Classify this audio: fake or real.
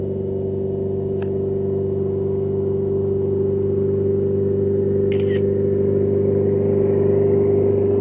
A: real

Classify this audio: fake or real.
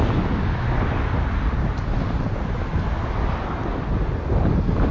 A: real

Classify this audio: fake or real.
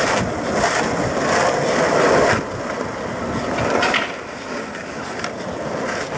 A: real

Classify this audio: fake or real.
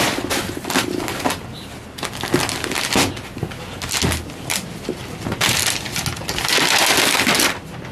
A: real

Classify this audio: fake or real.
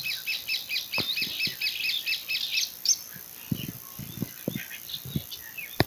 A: fake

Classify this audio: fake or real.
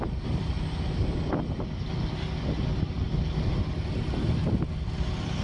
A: real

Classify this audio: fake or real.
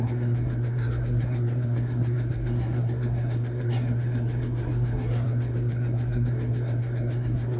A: fake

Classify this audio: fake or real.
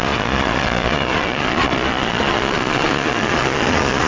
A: fake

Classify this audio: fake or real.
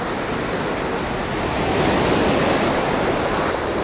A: real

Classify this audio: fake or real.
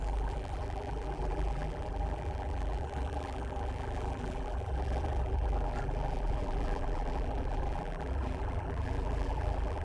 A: fake